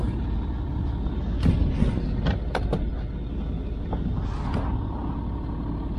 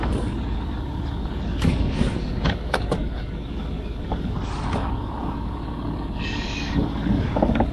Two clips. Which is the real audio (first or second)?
first